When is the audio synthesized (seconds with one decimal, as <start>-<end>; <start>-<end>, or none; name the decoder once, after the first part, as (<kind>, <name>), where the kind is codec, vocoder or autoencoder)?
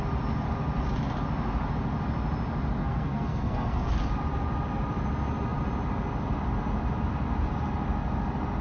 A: 2.8-3.9 (codec, SNAC)